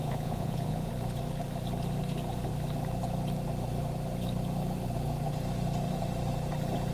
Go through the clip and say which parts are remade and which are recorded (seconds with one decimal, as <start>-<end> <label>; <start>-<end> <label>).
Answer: 0.0-0.9 remade; 0.9-6.9 recorded